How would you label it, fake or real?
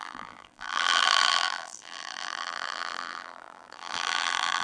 fake